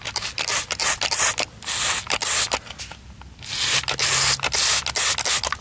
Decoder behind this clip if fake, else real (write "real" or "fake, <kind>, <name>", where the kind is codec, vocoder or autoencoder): real